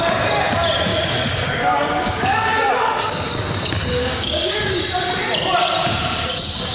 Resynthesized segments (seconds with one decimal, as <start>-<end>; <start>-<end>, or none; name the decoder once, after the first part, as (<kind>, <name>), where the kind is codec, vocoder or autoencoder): 0.9-2.7 (codec, DAC); 3.9-4.8